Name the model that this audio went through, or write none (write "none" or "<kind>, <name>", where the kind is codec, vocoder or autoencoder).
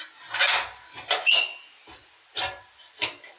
none